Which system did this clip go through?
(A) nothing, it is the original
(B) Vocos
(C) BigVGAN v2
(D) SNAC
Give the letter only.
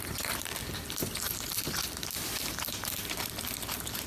C